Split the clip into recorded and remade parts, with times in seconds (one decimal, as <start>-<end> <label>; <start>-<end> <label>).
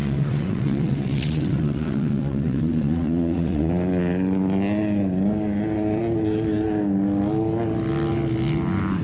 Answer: 0.0-3.7 remade; 3.7-9.0 recorded